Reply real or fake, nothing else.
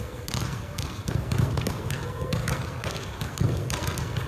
fake